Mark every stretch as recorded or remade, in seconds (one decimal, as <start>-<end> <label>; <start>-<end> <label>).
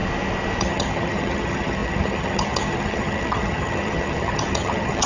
0.0-0.6 recorded; 0.6-5.1 remade